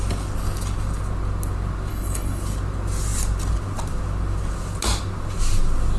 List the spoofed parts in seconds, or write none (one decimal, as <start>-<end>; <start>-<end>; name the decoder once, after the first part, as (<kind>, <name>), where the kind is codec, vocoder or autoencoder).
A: 1.9-2.4 (codec, HILCodec)